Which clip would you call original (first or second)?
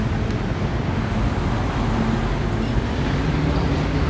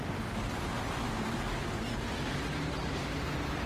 first